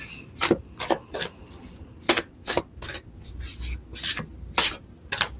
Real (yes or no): yes